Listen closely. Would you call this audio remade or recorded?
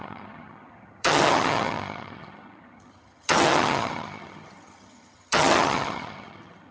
remade